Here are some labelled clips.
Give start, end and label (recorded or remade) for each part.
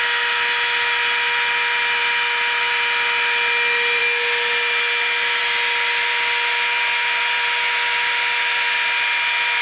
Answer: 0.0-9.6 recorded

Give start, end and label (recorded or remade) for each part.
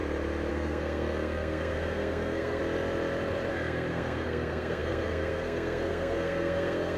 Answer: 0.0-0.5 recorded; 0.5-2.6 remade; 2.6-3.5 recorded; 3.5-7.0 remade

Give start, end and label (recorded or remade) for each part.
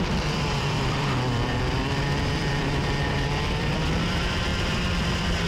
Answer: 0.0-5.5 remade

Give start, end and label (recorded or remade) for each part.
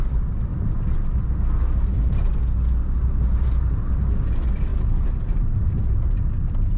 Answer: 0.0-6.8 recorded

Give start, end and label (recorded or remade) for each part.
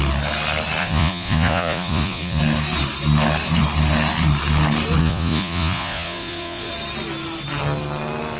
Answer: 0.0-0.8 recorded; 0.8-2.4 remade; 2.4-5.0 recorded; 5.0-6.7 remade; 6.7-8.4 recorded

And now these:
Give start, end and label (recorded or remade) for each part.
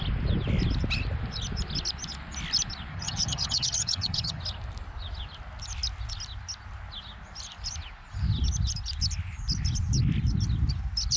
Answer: 0.0-2.9 recorded; 2.9-4.4 remade; 4.4-11.2 recorded